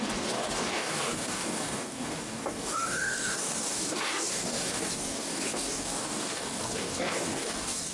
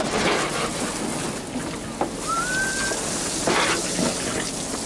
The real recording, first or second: second